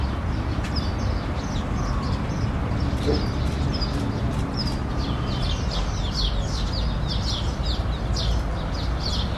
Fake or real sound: real